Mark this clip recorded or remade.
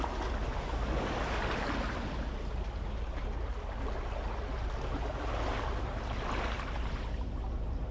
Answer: recorded